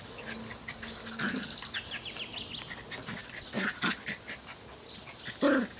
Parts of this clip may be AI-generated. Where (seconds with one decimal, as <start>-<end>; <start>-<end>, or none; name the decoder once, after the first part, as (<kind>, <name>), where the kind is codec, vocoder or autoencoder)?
none